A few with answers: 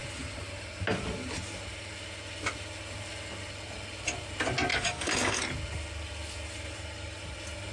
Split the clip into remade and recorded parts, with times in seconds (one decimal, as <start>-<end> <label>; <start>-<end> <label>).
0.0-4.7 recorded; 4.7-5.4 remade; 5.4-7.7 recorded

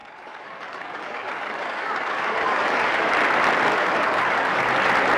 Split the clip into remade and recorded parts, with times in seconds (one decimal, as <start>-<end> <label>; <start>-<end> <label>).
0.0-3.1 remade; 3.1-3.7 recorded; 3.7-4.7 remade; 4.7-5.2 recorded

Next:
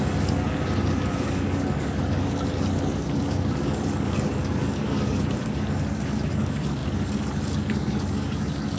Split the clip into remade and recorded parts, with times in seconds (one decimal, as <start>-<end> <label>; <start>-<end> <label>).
0.0-8.8 remade